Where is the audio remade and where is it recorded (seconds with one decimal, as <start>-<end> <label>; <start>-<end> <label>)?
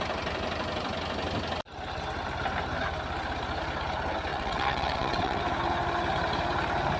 0.0-4.3 recorded; 4.3-5.4 remade; 5.4-7.0 recorded